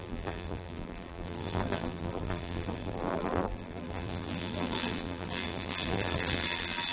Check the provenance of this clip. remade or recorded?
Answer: remade